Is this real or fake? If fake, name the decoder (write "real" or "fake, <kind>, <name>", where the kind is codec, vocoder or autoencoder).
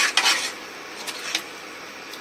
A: real